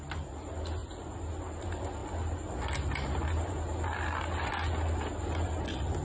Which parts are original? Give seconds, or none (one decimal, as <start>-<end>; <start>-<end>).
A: 0.0-6.0